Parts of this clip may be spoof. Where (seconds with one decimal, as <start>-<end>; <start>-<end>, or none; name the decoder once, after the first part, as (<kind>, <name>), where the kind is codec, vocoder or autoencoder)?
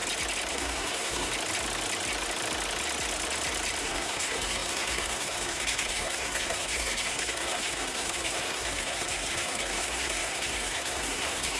0.5-1.3 (codec, SNAC); 3.8-11.6